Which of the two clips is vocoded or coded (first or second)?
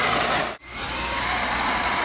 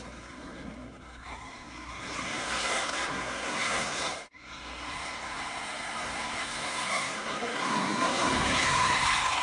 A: second